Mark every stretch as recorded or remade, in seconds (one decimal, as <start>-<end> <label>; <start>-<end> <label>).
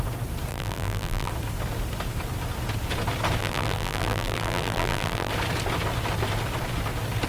0.0-0.5 recorded; 0.5-1.3 remade; 1.3-3.4 recorded; 3.4-5.3 remade; 5.3-7.3 recorded